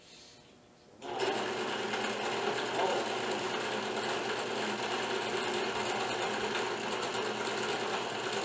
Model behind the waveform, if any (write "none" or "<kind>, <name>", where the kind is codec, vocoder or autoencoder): none